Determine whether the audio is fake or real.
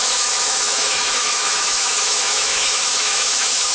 fake